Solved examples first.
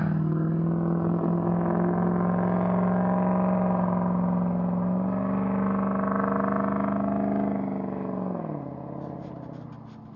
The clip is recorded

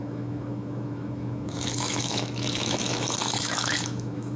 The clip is remade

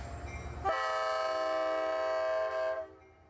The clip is recorded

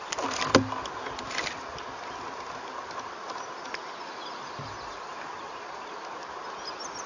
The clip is recorded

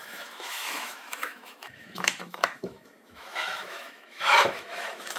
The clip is remade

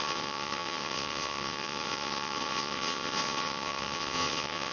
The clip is remade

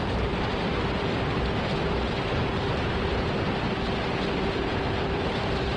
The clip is remade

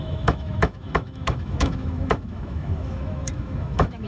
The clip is remade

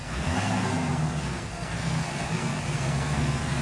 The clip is remade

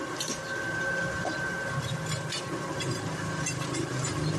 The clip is recorded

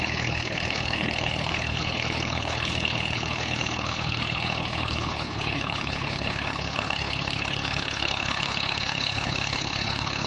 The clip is remade